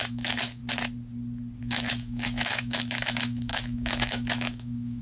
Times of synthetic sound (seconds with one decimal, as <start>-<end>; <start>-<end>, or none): 0.0-0.6; 1.6-5.0